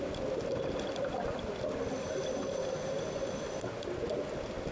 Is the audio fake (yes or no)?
no